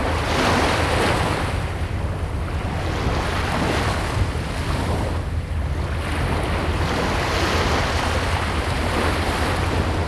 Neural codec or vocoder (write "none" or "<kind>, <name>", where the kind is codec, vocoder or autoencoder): none